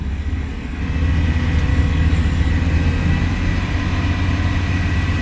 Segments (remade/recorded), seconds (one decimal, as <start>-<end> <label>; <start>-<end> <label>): 0.0-0.8 remade; 0.8-1.7 recorded; 1.7-2.5 remade; 2.5-5.2 recorded